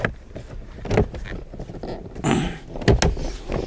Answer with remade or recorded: recorded